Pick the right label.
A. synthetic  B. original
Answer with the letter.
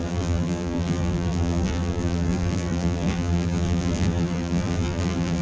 A